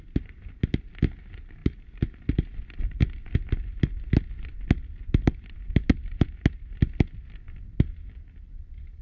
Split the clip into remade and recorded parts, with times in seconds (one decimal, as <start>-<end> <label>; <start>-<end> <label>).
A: 0.0-9.0 recorded

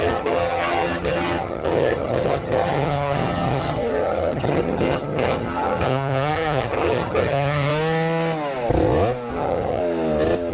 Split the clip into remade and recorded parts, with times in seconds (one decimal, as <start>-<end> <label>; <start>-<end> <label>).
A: 0.0-7.7 remade; 7.7-9.3 recorded; 9.3-9.8 remade; 9.8-10.5 recorded